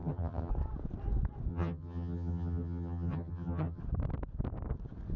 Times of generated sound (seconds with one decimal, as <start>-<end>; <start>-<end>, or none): 0.0-0.5; 1.5-3.8